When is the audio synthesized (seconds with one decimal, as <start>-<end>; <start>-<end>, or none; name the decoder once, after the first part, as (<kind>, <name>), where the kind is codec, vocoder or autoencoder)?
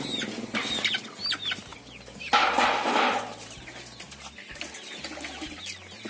1.7-3.2 (vocoder, BigVGAN v2)